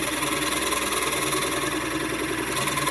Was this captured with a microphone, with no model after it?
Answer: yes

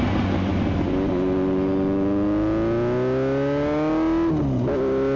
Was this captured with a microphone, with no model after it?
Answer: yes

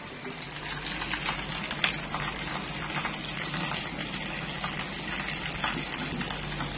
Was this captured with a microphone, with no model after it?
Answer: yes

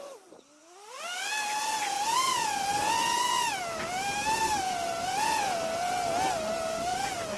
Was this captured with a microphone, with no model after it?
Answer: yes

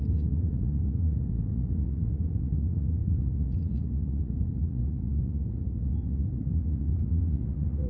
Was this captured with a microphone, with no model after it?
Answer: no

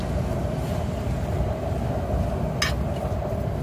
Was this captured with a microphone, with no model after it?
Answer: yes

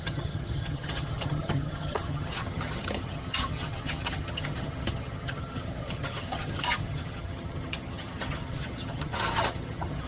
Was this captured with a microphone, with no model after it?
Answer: no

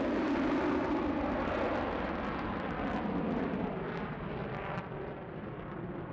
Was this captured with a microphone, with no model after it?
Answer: yes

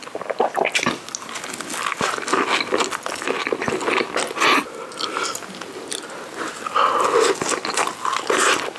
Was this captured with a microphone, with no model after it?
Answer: yes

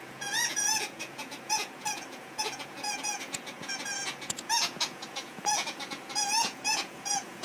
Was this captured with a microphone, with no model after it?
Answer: no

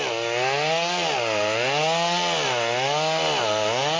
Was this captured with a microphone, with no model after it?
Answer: yes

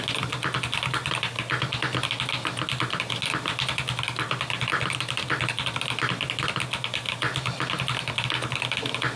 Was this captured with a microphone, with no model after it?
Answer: yes